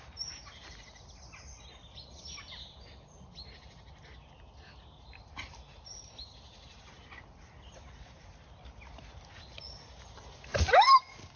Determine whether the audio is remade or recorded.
recorded